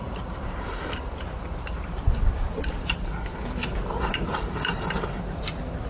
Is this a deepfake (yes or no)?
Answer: yes